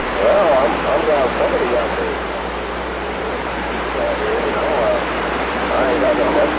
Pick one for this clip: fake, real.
fake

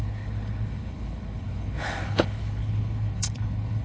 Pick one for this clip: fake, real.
fake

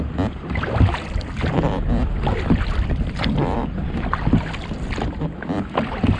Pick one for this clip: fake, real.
real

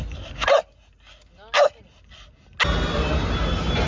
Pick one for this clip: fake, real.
real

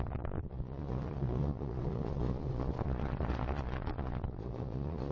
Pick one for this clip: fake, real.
fake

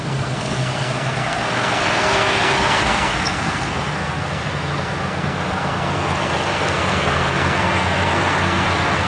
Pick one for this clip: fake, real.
fake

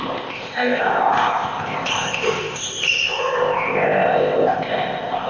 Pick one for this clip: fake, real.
fake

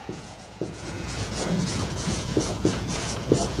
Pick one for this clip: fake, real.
fake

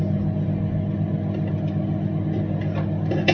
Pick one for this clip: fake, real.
real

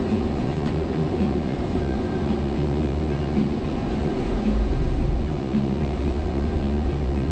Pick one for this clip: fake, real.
fake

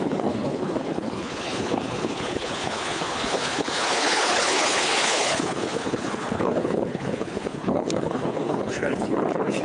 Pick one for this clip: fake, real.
fake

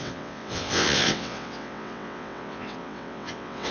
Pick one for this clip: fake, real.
fake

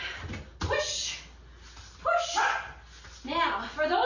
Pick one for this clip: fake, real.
real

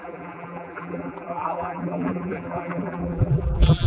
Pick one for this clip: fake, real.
fake